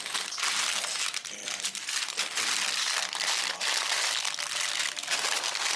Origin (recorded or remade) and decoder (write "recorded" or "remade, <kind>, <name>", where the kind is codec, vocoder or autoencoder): recorded